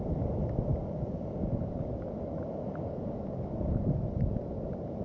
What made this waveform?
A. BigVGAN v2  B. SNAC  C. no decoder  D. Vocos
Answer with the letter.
C